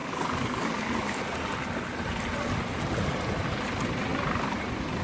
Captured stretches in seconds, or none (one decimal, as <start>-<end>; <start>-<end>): 1.2-5.0